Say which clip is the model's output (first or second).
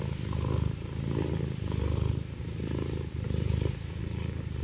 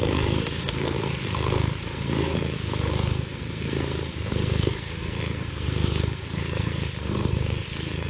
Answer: second